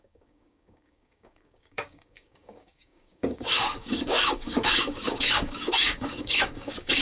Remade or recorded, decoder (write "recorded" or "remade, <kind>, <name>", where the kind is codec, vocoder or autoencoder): remade, codec, DAC